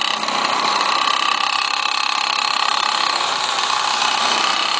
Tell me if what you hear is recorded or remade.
recorded